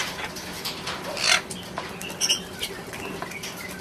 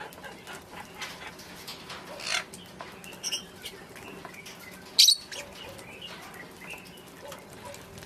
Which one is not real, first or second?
first